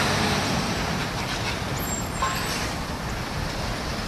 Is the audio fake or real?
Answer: fake